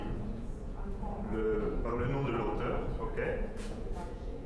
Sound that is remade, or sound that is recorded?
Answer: remade